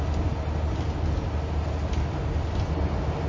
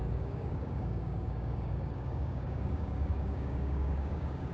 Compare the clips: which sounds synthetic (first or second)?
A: second